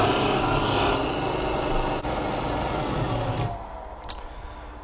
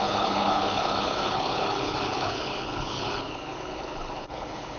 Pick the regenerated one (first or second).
second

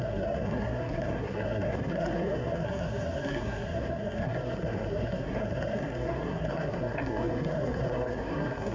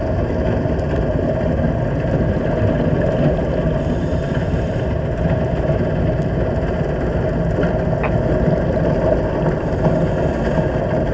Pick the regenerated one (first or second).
first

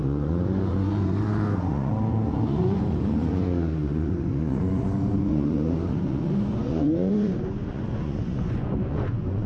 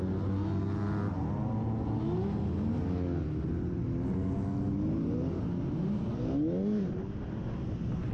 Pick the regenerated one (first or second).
first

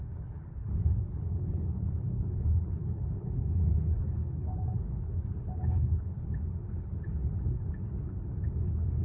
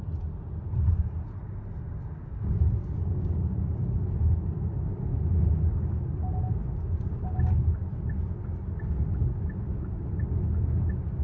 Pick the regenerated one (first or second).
first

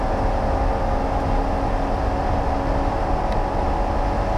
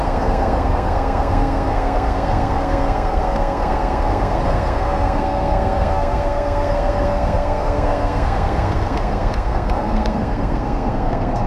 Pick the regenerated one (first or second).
second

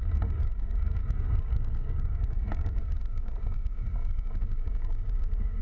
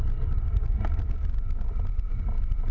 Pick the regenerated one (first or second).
first